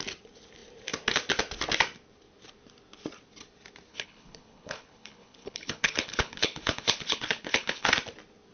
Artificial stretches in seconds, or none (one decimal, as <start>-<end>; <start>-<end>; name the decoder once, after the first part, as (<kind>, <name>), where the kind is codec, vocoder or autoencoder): 3.9-7.9 (codec, HILCodec)